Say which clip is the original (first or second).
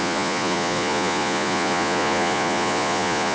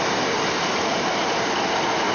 second